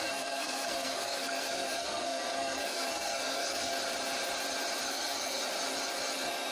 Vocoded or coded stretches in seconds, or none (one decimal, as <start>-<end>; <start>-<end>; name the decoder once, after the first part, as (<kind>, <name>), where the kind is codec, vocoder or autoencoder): 0.0-3.7 (codec, SNAC); 4.9-5.4